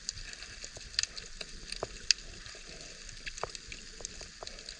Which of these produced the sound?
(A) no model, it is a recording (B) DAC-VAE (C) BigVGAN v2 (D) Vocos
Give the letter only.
A